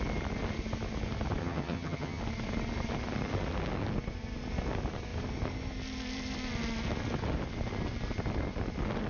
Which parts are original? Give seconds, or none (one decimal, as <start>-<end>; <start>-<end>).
0.0-1.4; 2.2-9.1